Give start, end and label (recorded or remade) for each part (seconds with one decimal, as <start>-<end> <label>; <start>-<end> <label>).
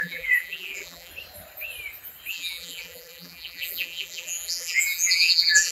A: 0.0-1.1 remade; 1.1-2.3 recorded; 2.3-5.7 remade